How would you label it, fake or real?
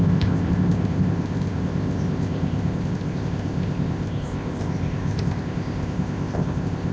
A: fake